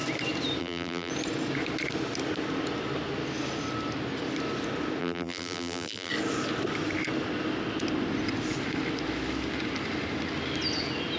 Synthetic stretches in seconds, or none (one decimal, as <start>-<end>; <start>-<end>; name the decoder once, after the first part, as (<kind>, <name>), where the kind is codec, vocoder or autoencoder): 0.6-1.1 (vocoder, BigVGAN v2); 5.0-6.1